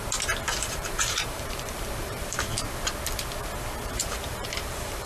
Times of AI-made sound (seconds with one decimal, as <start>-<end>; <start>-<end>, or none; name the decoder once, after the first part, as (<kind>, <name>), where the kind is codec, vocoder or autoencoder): 0.6-2.5 (vocoder, BigVGAN v2); 3.8-5.1